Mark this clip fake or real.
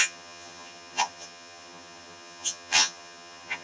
fake